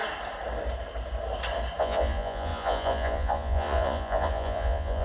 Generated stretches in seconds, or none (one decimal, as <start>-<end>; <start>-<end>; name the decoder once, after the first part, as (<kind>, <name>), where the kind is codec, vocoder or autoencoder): 1.8-5.0 (vocoder, Vocos)